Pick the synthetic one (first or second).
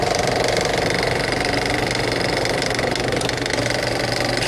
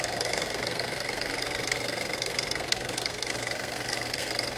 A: second